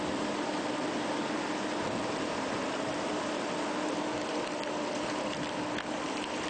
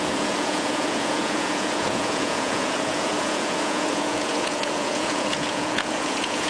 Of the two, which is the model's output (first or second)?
second